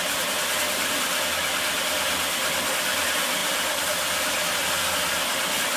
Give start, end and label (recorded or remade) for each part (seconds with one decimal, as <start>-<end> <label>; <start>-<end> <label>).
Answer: 0.0-3.4 recorded; 3.4-4.3 remade; 4.3-5.8 recorded